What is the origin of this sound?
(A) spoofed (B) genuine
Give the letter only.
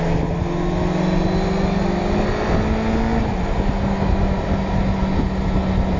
B